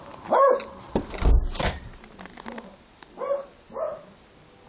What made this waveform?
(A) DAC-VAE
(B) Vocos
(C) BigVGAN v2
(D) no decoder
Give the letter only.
D